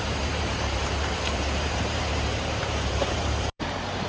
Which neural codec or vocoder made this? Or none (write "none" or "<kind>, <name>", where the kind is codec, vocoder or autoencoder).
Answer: vocoder, BigVGAN v2